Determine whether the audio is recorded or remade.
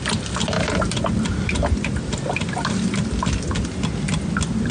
recorded